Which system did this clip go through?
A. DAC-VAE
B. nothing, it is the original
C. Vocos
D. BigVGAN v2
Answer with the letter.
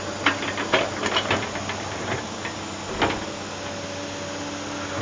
B